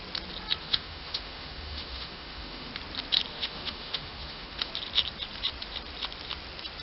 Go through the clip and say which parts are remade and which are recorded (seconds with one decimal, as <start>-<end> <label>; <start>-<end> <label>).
0.0-0.6 recorded; 0.6-2.7 remade; 2.7-3.3 recorded; 3.3-4.7 remade; 4.7-6.8 recorded